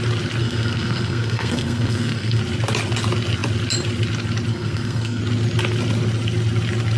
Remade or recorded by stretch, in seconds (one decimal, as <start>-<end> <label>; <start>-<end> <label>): 0.0-0.4 recorded; 0.4-2.4 remade; 2.4-4.5 recorded; 4.5-5.2 remade; 5.2-7.0 recorded